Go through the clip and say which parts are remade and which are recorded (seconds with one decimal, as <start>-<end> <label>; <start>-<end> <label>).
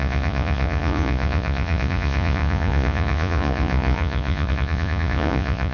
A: 0.0-5.7 remade